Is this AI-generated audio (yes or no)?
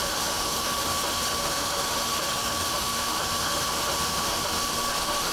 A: yes